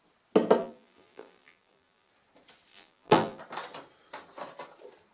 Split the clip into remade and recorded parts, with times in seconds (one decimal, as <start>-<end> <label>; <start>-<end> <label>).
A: 0.0-0.6 recorded; 0.6-2.1 remade; 2.1-2.7 recorded; 2.7-3.4 remade; 3.4-5.1 recorded